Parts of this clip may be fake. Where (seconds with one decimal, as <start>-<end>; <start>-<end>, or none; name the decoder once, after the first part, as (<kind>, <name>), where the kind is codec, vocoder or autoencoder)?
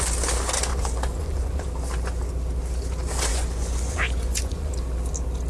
0.7-1.7 (vocoder, Vocos); 3.3-4.7